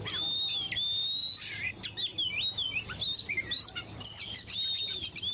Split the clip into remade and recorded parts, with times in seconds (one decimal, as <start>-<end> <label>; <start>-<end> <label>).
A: 0.0-5.3 recorded